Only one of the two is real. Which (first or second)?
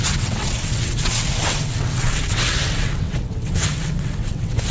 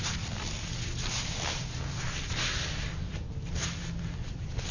second